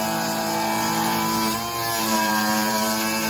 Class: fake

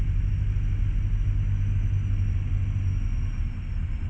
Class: real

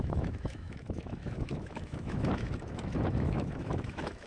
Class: fake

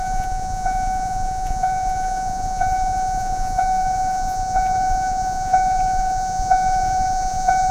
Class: fake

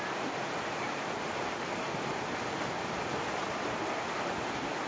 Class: real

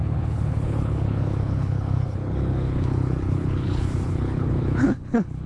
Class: fake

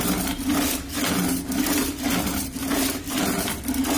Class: real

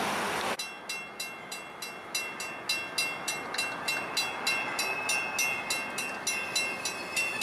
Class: real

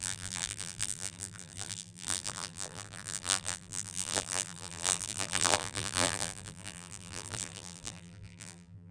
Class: fake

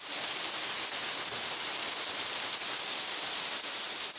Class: fake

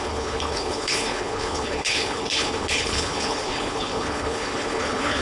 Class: fake